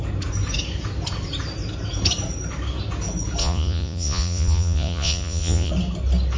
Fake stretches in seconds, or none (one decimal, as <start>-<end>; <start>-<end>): 3.4-5.7